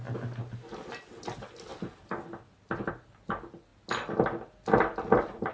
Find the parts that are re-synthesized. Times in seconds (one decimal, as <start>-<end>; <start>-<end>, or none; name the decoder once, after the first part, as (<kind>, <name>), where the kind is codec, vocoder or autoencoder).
none